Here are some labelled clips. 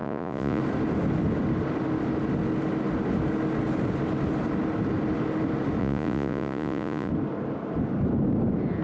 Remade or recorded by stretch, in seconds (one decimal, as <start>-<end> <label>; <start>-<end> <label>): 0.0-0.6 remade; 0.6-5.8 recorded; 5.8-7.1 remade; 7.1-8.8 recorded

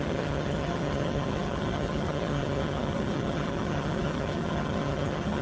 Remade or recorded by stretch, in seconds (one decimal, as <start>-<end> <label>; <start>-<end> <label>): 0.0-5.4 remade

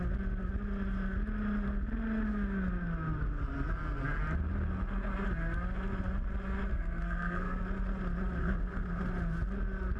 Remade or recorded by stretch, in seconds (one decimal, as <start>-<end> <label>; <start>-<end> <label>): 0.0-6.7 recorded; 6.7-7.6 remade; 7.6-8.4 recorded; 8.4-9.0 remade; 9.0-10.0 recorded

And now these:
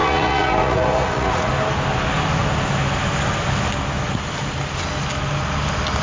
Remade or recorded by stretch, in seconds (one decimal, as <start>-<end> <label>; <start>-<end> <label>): 0.0-1.5 remade; 1.5-6.0 recorded

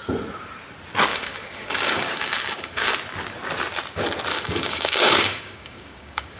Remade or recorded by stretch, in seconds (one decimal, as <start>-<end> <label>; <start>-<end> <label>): 0.0-1.1 recorded; 1.1-2.9 remade; 2.9-4.3 recorded; 4.3-6.4 remade

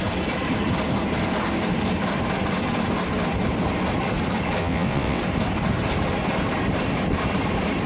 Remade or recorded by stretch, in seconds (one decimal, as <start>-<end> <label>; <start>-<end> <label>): 0.0-4.6 recorded; 4.6-5.2 remade; 5.2-7.9 recorded

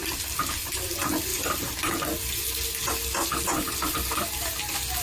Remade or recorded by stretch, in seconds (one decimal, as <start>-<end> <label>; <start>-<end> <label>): 0.0-5.0 recorded

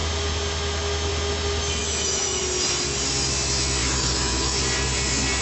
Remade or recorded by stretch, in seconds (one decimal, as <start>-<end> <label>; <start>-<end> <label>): 0.0-1.8 recorded; 1.8-2.4 remade; 2.4-3.8 recorded; 3.8-4.6 remade; 4.6-5.4 recorded